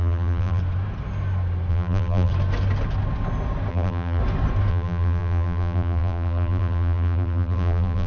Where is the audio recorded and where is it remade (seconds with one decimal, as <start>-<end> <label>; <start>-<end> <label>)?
0.0-0.6 remade; 0.6-1.7 recorded; 1.7-2.3 remade; 2.3-3.7 recorded; 3.7-4.2 remade; 4.2-4.7 recorded; 4.7-8.1 remade